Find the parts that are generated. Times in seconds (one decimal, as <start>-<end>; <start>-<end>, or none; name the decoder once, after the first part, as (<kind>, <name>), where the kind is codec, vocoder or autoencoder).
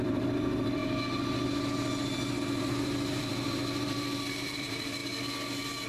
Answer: 0.0-0.8 (vocoder, BigVGAN v2); 2.4-5.0